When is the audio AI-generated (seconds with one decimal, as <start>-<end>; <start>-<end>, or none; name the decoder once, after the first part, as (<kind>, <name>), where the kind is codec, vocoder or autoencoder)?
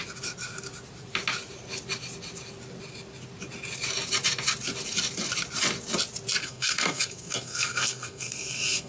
6.4-8.9 (codec, SNAC)